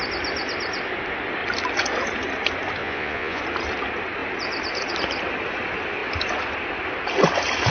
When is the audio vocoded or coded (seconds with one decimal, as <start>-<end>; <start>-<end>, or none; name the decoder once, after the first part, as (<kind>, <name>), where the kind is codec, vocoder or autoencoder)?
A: 2.8-3.4 (vocoder, Vocos)